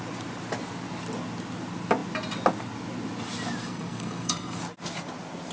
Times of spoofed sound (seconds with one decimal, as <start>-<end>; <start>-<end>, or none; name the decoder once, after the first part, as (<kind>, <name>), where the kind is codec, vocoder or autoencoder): 3.6-4.6 (codec, SNAC)